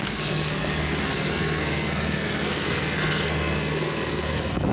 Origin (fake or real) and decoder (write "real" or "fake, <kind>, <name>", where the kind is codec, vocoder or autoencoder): fake, codec, SNAC